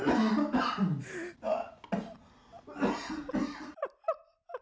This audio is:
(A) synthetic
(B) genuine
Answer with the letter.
B